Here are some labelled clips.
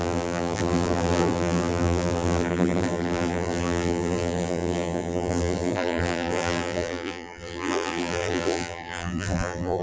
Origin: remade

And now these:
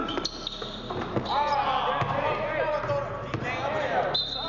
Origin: recorded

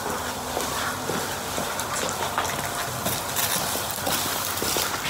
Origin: recorded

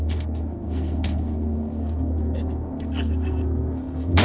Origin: remade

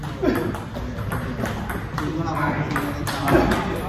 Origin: recorded